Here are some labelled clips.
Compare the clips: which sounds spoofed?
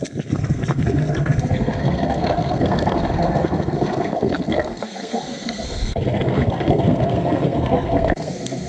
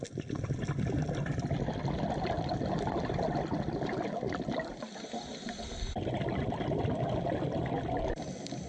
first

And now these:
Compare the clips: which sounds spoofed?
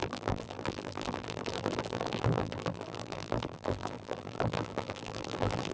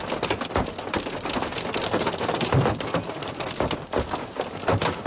first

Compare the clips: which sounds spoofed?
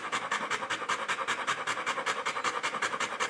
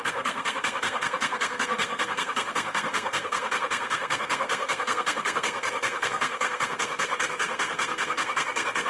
second